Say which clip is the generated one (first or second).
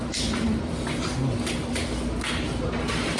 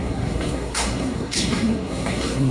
second